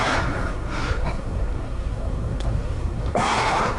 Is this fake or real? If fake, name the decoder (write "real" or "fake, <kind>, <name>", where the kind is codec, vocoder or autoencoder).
fake, codec, SNAC